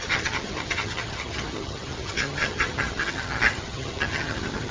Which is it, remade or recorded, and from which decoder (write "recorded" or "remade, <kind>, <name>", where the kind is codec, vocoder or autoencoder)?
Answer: remade, vocoder, HiFi-GAN